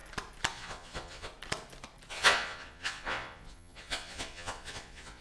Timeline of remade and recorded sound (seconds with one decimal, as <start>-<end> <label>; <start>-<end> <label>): 0.0-0.5 recorded; 0.5-1.3 remade; 1.3-2.1 recorded; 2.1-5.2 remade